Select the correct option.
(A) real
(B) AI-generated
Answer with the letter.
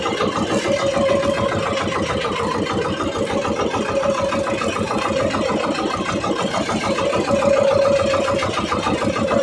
A